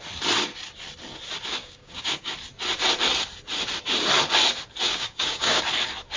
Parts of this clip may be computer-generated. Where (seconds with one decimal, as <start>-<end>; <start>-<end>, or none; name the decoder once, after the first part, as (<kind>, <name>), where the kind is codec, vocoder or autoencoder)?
1.6-2.3 (codec, DAC); 4.9-5.6